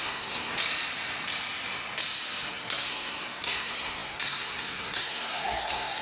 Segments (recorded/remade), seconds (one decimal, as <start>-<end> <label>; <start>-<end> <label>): 0.0-0.5 remade; 0.5-2.5 recorded; 2.5-6.0 remade